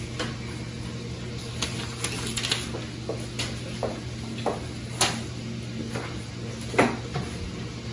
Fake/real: real